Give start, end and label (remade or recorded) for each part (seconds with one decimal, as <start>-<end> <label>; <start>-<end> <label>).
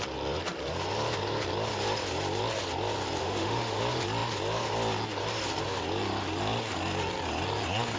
0.0-3.2 recorded; 3.2-3.8 remade; 3.8-8.0 recorded